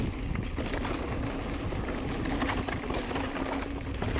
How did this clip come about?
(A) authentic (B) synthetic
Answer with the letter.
A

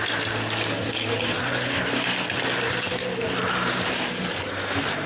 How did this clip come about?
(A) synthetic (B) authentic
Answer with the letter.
B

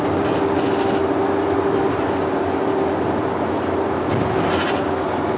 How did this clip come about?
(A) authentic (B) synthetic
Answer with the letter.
A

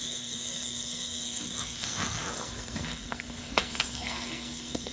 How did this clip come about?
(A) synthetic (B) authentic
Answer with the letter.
A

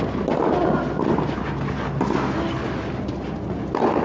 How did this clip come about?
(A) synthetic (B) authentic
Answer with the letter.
B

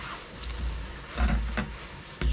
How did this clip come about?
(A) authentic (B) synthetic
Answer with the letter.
A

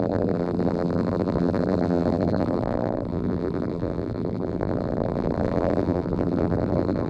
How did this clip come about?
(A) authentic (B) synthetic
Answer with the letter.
B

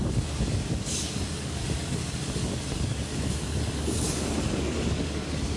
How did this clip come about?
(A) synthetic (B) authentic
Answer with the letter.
A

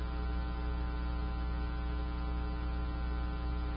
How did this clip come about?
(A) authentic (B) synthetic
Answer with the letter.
A